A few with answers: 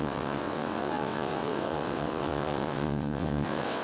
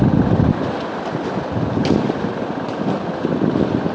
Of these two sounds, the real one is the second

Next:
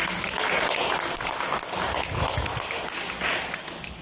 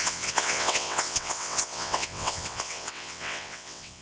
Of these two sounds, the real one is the first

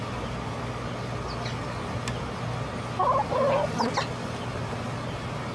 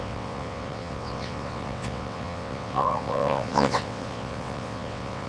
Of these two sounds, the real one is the first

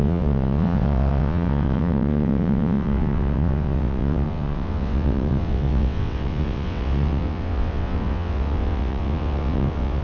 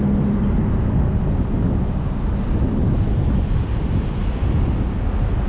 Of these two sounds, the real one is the second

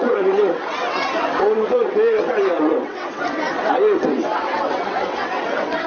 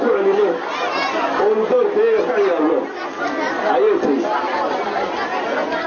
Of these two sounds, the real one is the second